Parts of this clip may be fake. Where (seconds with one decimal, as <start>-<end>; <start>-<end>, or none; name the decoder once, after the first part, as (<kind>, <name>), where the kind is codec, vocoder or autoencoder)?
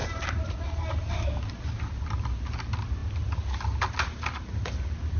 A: none